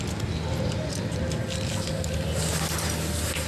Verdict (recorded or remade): recorded